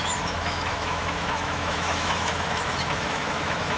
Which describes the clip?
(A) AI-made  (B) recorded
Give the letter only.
A